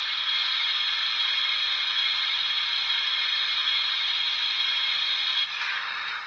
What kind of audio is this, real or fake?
fake